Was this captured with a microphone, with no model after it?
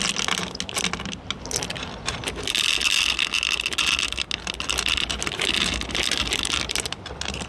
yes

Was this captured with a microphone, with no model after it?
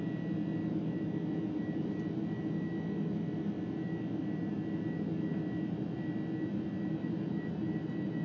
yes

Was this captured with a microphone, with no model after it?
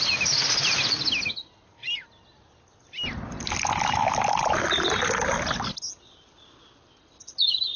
yes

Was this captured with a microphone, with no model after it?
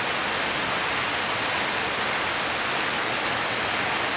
yes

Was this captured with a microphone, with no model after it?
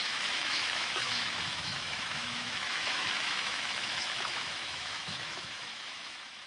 no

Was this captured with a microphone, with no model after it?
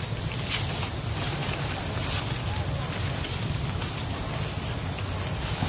yes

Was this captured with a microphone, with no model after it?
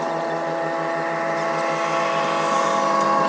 yes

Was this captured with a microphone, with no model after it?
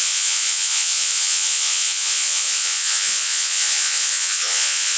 no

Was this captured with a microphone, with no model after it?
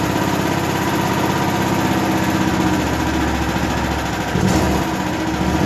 yes